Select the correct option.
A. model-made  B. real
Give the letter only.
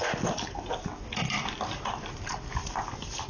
B